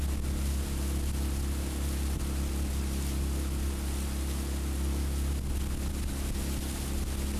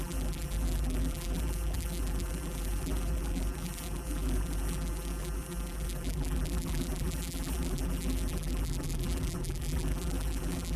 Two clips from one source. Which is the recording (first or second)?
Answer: first